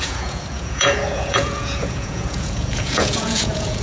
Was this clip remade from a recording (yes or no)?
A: yes